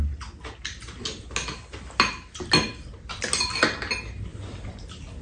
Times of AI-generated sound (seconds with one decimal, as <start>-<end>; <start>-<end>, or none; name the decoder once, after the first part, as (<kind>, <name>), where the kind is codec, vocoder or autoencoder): none

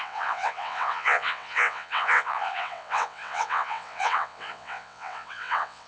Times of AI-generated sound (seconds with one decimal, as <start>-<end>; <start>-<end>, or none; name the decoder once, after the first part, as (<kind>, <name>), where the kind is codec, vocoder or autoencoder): 0.0-5.9 (vocoder, WaveNeXt)

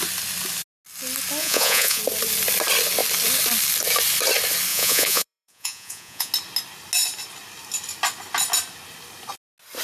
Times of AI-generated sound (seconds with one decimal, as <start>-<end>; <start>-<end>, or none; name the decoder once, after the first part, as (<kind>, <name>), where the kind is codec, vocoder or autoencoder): 1.4-2.0 (vocoder, Vocos); 4.7-6.3

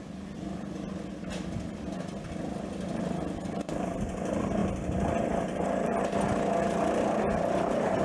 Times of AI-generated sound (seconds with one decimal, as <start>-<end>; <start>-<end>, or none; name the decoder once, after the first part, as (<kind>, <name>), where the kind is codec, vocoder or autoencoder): none

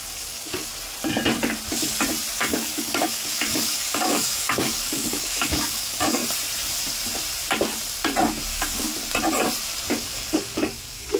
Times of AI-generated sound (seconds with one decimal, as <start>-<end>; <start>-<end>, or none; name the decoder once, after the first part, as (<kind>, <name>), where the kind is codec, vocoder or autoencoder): 0.0-0.7 (codec, DAC); 2.4-6.2; 8.5-8.9; 10.0-11.2

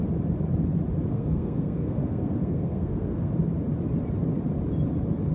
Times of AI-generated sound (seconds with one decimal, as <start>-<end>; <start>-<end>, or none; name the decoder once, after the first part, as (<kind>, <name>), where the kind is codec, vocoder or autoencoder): 1.1-3.3 (codec, SNAC)

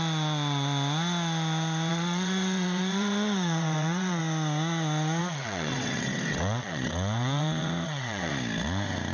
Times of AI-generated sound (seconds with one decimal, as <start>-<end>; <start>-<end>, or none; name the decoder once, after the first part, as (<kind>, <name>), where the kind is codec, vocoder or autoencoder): 1.9-4.2 (vocoder, WaveNeXt); 5.2-8.3